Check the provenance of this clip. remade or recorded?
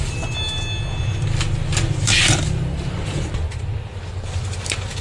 recorded